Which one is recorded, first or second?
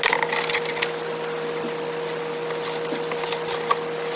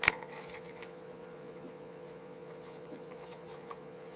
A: first